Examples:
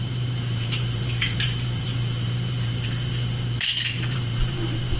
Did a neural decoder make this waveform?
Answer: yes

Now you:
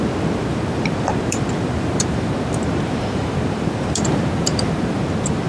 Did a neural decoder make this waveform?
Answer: yes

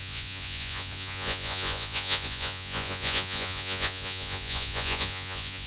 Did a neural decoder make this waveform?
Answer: yes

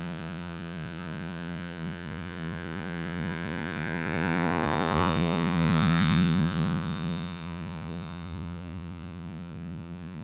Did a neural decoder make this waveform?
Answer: yes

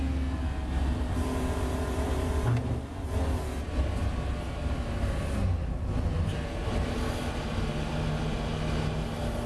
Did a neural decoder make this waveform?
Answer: no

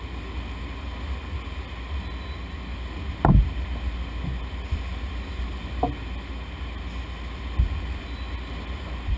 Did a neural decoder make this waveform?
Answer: no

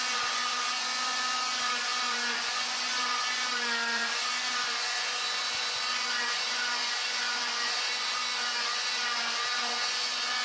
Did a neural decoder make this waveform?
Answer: yes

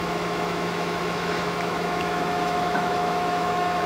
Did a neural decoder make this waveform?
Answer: yes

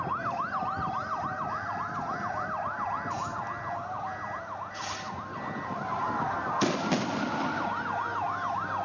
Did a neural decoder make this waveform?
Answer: no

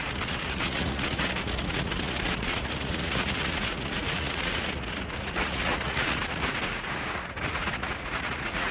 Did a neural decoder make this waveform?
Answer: yes